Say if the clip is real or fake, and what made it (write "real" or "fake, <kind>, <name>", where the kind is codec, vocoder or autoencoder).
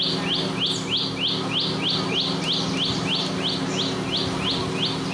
real